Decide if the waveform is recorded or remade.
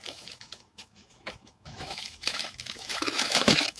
remade